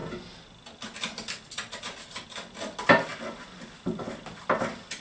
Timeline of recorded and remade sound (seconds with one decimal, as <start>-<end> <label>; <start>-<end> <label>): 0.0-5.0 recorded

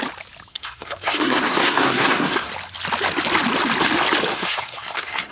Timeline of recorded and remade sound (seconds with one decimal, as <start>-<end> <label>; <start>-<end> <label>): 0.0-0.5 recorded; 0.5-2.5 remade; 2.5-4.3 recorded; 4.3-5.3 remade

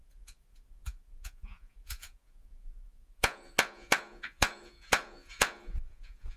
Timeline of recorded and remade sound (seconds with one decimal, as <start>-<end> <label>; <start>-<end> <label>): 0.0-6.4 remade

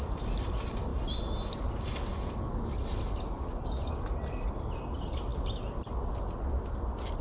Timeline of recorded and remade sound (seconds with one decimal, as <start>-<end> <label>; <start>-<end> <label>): 0.0-7.2 recorded

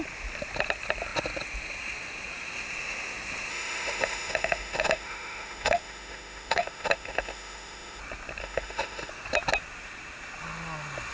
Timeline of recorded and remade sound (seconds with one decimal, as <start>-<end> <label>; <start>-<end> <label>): 0.0-3.5 recorded; 3.5-8.0 remade; 8.0-8.4 recorded; 8.4-9.1 remade; 9.1-11.1 recorded

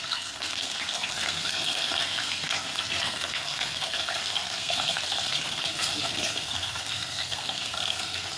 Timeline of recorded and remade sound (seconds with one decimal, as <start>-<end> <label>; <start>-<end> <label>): 0.0-8.4 remade